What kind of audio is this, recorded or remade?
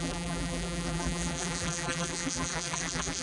remade